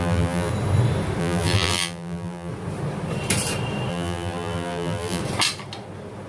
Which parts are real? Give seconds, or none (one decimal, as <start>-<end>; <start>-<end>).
0.5-1.2; 2.5-3.9; 5.2-6.3